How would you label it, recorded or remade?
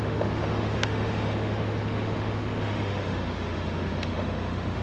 remade